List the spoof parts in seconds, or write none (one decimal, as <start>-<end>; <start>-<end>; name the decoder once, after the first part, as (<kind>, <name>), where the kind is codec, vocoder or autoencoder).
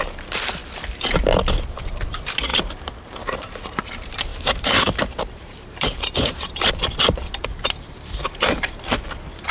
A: 2.5-3.8 (vocoder, BigVGAN v2); 4.3-6.7